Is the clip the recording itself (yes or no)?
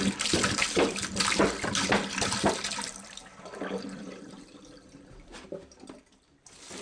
no